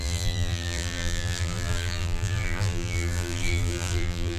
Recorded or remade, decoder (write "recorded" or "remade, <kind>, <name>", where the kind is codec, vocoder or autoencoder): remade, vocoder, BigVGAN v2